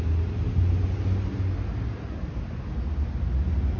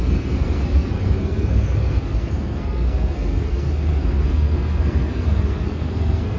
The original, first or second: first